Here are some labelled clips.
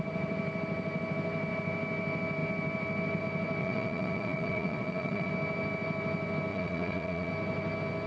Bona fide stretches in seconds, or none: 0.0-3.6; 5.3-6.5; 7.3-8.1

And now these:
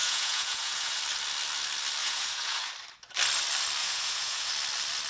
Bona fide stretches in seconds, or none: 1.0-2.0; 2.7-3.8; 4.5-5.1

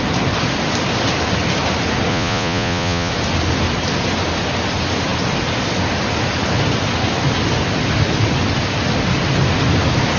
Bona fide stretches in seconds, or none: 0.0-2.1; 3.1-10.2

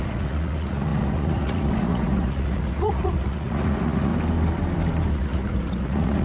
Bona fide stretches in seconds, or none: 4.1-5.1